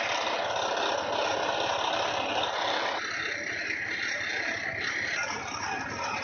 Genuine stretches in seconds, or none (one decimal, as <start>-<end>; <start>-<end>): 0.0-1.3; 3.6-4.3; 4.9-6.2